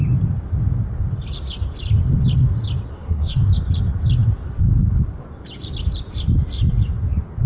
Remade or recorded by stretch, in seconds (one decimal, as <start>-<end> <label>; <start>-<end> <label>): 0.0-2.9 recorded; 2.9-3.4 remade; 3.4-7.5 recorded